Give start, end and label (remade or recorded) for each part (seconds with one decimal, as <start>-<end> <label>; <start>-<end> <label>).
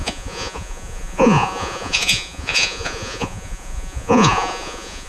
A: 0.0-5.1 remade